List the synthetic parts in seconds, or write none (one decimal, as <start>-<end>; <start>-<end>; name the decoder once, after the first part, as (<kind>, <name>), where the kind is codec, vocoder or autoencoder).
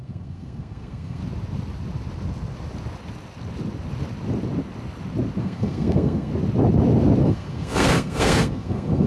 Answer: 0.0-1.2 (codec, SNAC); 5.4-6.3; 7.2-9.1